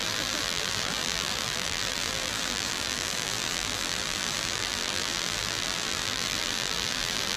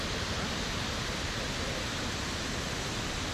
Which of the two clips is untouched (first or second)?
second